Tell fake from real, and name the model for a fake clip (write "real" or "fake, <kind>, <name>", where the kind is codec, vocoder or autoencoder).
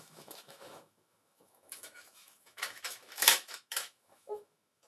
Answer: fake, autoencoder, DAC-VAE